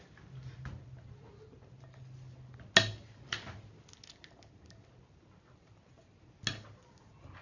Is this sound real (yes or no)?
yes